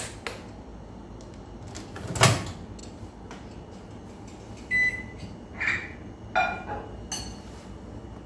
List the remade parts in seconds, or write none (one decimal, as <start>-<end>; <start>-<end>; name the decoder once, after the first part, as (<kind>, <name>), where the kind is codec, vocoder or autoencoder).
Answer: none

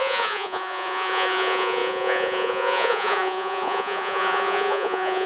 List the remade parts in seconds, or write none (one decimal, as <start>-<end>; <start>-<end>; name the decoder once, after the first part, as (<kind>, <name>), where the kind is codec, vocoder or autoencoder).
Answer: 0.0-5.3 (vocoder, Vocos)

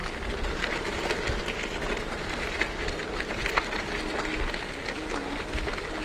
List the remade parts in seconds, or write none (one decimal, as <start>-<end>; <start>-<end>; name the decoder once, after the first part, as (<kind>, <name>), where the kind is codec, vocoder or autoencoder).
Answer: none